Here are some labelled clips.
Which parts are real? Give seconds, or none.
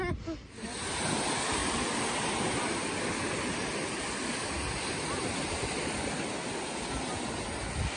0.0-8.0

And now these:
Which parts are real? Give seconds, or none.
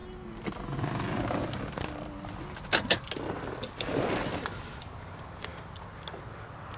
0.0-6.8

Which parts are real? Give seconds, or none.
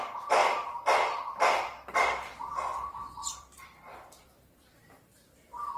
0.4-1.2